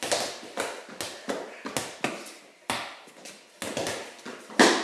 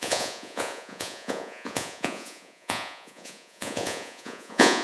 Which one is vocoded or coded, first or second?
second